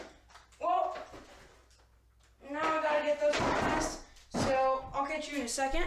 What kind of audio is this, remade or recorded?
recorded